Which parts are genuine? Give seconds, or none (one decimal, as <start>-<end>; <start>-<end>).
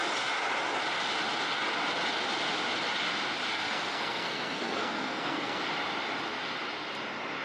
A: 0.0-3.5; 5.6-7.4